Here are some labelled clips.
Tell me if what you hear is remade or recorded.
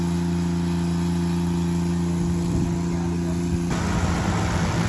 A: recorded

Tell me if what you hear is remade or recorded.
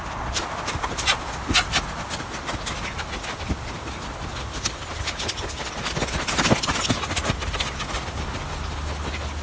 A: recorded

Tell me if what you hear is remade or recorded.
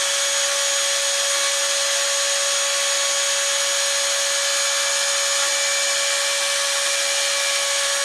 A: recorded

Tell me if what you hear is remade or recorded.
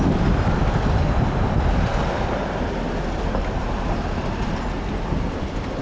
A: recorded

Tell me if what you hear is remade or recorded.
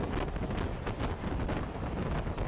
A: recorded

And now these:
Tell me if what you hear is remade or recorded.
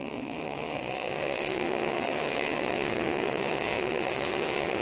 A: remade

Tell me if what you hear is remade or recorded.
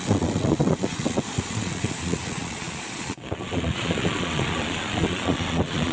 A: remade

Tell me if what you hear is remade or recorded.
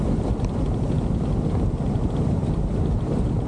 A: recorded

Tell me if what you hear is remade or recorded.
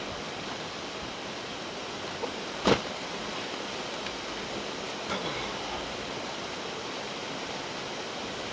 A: remade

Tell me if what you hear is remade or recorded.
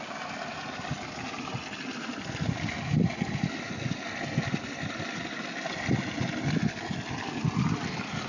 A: recorded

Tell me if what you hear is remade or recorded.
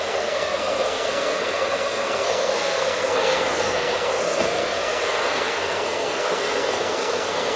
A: remade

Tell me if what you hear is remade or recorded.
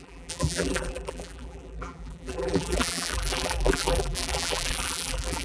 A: remade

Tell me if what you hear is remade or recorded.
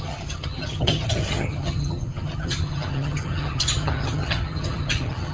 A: remade